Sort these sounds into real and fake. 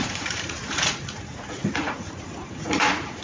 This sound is fake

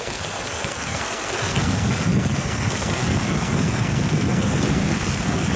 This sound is fake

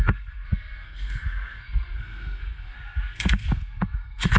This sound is fake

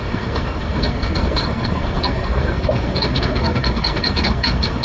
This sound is fake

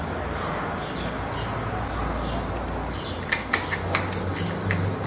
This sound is real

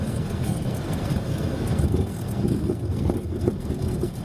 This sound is fake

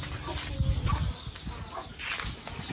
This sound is real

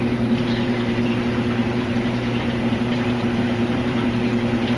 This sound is fake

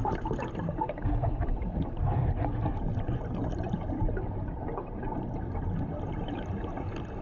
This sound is fake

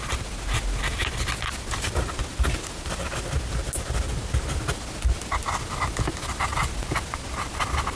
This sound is real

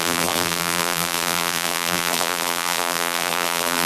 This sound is fake